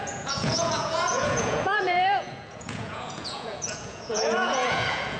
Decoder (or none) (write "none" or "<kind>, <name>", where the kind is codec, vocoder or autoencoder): vocoder, Vocos